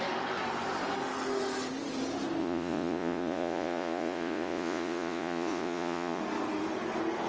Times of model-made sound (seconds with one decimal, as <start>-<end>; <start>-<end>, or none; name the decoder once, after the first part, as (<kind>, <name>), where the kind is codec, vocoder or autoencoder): 2.4-6.2 (vocoder, Vocos)

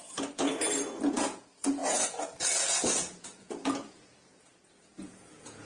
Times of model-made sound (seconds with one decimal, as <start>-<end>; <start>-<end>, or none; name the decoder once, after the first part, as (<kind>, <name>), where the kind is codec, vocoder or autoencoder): 0.0-0.5 (vocoder, Vocos); 1.1-5.7